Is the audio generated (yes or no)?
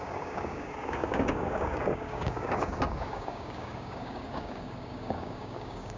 yes